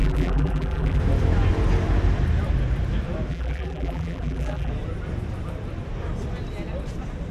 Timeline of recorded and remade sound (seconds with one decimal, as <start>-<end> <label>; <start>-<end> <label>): 0.0-1.0 remade; 1.0-3.3 recorded; 3.3-4.7 remade; 4.7-7.3 recorded